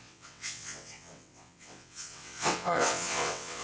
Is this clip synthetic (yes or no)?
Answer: yes